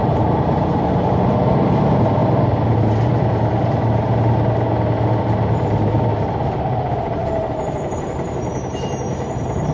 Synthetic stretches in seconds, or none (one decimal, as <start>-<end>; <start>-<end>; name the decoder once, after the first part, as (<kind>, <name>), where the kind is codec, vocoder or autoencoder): 0.0-2.2 (vocoder, BigVGAN v2); 5.2-6.1; 6.9-9.7